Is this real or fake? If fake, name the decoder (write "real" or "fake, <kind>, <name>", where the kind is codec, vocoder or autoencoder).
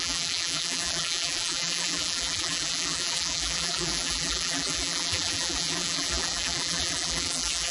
fake, vocoder, BigVGAN v2